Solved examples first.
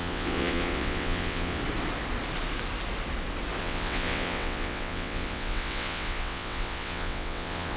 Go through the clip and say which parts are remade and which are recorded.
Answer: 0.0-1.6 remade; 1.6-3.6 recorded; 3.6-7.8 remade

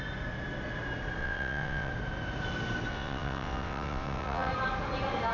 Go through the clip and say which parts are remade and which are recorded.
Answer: 0.0-1.2 recorded; 1.2-1.9 remade; 1.9-2.9 recorded; 2.9-4.5 remade; 4.5-5.3 recorded

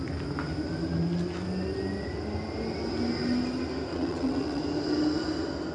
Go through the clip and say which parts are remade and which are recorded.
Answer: 0.0-3.9 recorded; 3.9-4.6 remade; 4.6-5.7 recorded